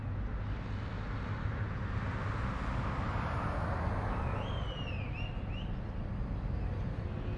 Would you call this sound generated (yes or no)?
no